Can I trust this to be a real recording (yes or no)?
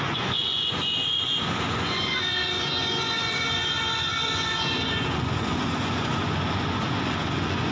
no